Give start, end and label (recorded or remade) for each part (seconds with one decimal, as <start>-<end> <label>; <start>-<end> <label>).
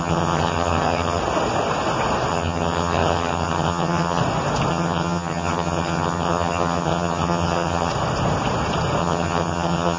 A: 0.0-1.2 remade; 1.2-2.3 recorded; 2.3-4.2 remade; 4.2-4.7 recorded; 4.7-7.9 remade; 7.9-9.0 recorded; 9.0-10.0 remade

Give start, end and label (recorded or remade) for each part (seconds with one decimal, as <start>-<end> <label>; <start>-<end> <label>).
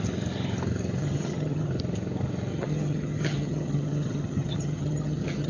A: 0.0-1.0 recorded; 1.0-1.7 remade; 1.7-2.5 recorded; 2.5-5.5 remade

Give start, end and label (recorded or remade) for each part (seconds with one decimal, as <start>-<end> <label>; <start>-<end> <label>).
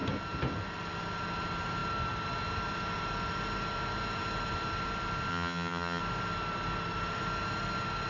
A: 0.0-5.3 recorded; 5.3-6.0 remade; 6.0-8.1 recorded